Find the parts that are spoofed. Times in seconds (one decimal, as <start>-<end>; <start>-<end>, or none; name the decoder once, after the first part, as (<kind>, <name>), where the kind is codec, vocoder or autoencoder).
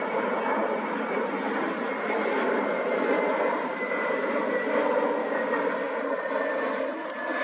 5.2-5.7 (codec, DAC)